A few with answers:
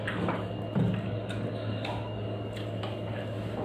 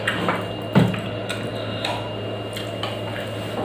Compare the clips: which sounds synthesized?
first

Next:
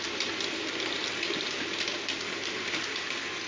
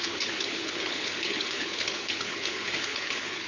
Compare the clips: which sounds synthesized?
second